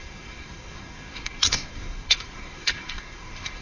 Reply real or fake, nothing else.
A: fake